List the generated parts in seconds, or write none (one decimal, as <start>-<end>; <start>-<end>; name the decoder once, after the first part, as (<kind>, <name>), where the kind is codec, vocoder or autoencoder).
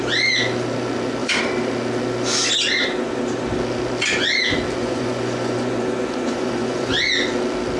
4.8-7.0 (vocoder, Vocos)